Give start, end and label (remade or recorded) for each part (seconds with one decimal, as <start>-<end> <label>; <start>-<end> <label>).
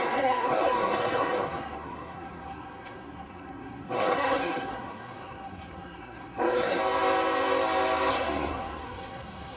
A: 0.0-6.8 remade; 6.8-8.1 recorded; 8.1-9.6 remade